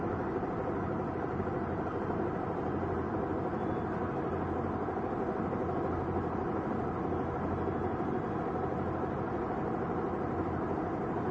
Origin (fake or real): real